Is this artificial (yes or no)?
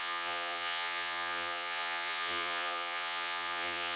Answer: yes